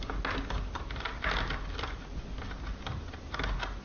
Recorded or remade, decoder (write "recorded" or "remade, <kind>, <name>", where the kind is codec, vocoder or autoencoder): recorded